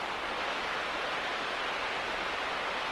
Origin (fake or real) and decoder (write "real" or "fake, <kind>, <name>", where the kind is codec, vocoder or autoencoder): real